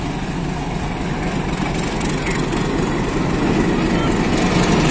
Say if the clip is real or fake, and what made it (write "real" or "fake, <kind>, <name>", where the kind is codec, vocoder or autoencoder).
real